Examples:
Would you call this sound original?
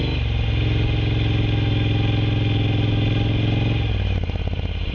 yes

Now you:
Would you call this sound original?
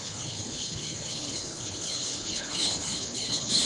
no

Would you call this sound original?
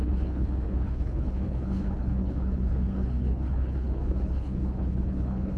no